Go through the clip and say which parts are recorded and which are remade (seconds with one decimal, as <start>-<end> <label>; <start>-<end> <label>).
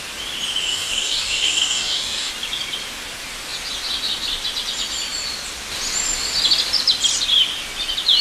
0.0-0.7 recorded; 0.7-2.3 remade; 2.3-8.2 recorded